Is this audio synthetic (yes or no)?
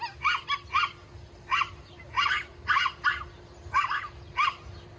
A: no